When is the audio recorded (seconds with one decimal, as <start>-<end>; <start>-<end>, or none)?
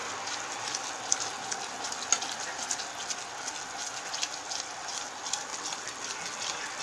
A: 0.0-6.8